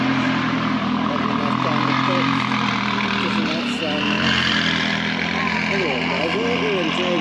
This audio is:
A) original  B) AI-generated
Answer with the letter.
A